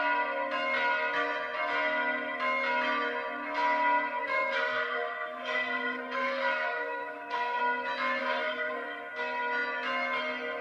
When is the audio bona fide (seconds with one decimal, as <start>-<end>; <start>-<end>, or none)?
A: 0.0-4.2; 7.6-8.2; 9.0-10.6